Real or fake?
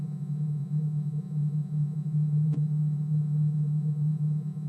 fake